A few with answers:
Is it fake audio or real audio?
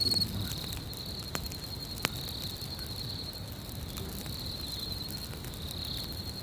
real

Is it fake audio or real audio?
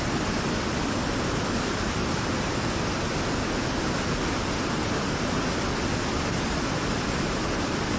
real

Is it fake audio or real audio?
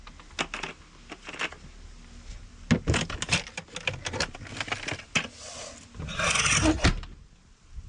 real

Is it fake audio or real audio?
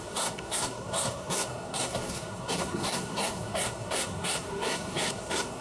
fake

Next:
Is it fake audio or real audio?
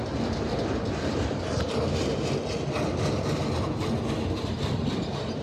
real